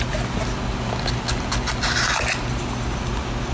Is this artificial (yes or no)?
no